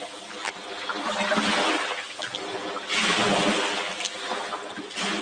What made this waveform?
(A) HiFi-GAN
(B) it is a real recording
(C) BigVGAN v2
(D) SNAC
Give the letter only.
B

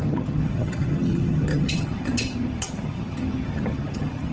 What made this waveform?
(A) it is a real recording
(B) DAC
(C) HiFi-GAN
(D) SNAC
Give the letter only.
C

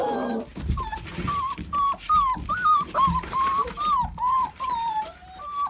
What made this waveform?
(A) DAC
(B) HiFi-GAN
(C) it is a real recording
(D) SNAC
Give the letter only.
C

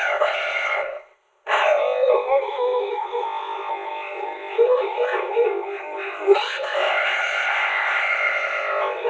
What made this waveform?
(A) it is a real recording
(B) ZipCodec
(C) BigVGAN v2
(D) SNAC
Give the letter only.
B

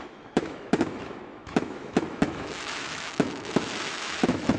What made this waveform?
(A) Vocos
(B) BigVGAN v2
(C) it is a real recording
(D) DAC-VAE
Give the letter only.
D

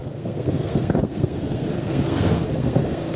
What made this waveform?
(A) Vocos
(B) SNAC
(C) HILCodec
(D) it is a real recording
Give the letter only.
B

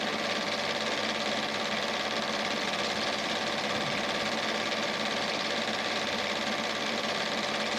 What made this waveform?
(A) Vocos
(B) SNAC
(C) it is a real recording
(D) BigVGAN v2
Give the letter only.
C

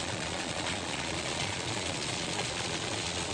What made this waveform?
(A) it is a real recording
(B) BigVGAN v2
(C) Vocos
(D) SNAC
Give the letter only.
C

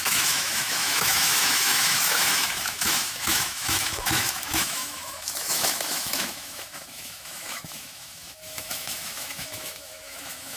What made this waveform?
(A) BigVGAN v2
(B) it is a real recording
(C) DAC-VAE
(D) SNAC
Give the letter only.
C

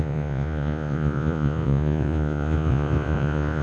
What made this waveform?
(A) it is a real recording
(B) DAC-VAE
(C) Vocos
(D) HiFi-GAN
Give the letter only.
C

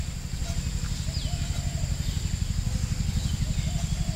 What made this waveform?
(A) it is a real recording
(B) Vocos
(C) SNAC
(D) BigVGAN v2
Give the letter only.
A